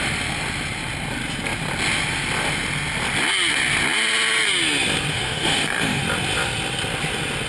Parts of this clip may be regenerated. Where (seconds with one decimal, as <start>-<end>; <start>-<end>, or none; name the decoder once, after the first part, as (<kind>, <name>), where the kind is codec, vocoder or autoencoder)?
5.1-6.0 (autoencoder, DAC-VAE)